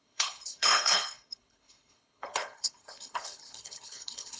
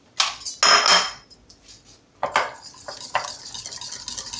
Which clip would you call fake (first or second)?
first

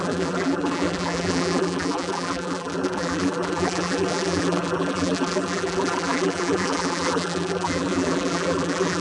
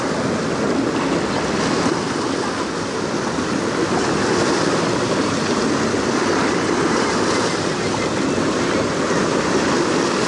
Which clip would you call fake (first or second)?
first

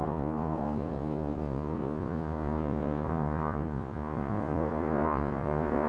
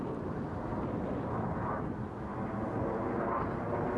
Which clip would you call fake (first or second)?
first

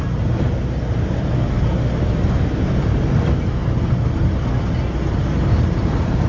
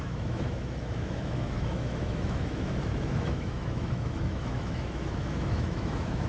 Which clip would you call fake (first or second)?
second